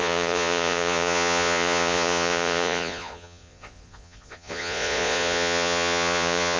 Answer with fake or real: fake